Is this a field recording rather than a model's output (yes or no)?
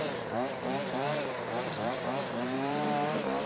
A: no